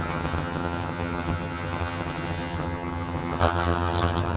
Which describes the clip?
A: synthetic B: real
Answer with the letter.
A